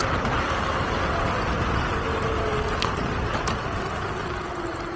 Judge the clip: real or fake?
real